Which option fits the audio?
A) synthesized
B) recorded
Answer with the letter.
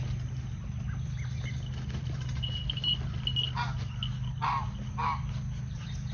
B